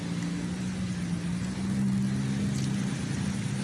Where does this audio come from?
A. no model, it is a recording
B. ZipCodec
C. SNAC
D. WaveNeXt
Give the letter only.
A